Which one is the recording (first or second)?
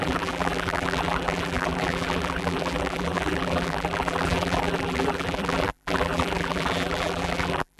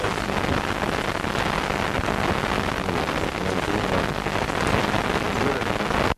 second